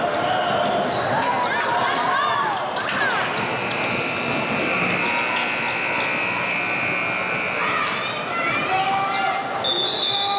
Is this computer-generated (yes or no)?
no